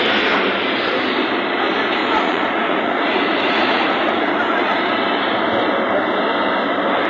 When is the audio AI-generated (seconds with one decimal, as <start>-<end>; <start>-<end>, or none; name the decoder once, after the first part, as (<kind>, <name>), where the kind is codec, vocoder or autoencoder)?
2.0-4.4 (vocoder, Vocos)